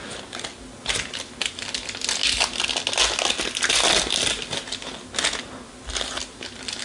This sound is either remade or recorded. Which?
recorded